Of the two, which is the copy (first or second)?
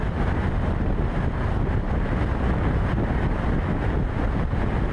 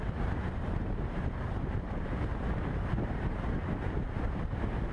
second